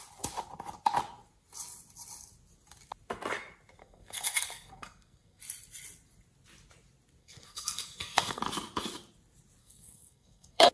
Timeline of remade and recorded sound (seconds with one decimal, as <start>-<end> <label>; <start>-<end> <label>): 0.0-3.8 recorded; 3.8-5.4 remade; 5.4-7.2 recorded; 7.2-8.4 remade; 8.4-9.6 recorded; 9.6-10.7 remade